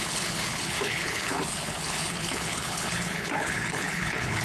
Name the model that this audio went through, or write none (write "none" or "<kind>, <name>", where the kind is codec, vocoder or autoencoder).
codec, HILCodec